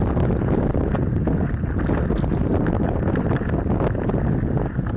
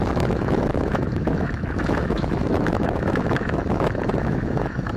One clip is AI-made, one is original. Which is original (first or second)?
first